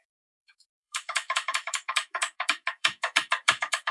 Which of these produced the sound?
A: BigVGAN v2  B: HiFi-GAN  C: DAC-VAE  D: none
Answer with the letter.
C